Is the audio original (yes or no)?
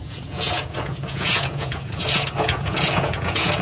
no